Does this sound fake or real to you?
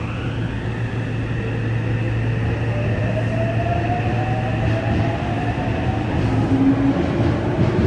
real